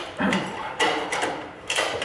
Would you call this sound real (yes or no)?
no